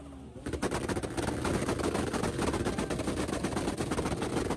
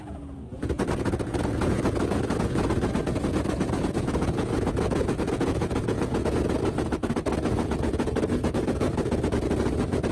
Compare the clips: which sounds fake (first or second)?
second